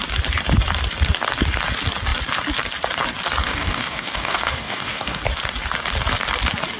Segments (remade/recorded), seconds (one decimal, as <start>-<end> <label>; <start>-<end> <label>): 0.0-3.4 recorded; 3.4-5.2 remade; 5.2-6.8 recorded

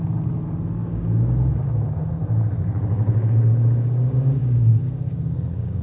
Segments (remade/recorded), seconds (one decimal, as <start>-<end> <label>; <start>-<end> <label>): 0.0-0.8 recorded; 0.8-1.5 remade; 1.5-3.0 recorded; 3.0-5.8 remade

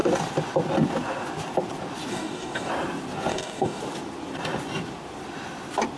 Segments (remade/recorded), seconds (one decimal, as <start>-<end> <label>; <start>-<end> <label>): 0.0-2.1 recorded; 2.1-2.7 remade; 2.7-3.3 recorded; 3.3-3.8 remade; 3.8-6.0 recorded

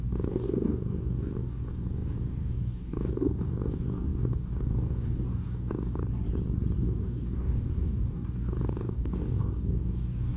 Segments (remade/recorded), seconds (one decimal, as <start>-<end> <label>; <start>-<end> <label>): 0.0-6.0 remade; 6.0-6.8 recorded; 6.8-10.4 remade

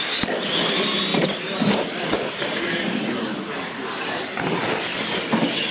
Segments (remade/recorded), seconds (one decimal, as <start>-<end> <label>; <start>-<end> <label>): 0.0-5.7 recorded

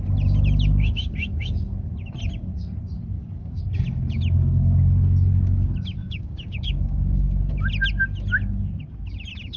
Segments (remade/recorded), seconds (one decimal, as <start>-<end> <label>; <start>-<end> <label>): 0.0-3.1 recorded; 3.1-3.6 remade; 3.6-6.0 recorded; 6.0-7.4 remade; 7.4-9.6 recorded

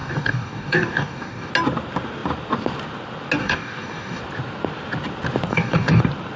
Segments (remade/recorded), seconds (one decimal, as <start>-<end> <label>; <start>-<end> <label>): 0.0-1.5 remade; 1.5-3.4 recorded; 3.4-4.2 remade; 4.2-5.5 recorded; 5.5-6.0 remade; 6.0-6.4 recorded